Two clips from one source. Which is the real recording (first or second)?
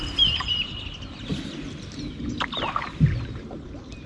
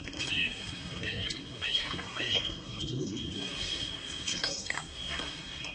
first